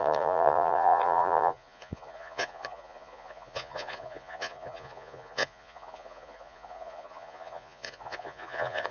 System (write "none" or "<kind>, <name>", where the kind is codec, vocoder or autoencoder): vocoder, Vocos